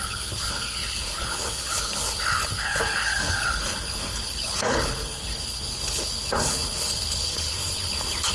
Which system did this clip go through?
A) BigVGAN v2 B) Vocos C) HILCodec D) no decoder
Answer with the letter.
C